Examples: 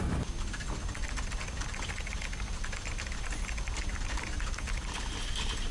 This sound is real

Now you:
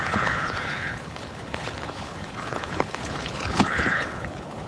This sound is fake